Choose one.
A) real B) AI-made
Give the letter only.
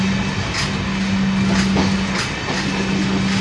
A